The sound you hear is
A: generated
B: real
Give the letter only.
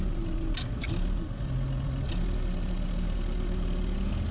B